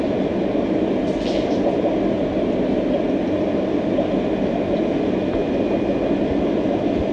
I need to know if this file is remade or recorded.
recorded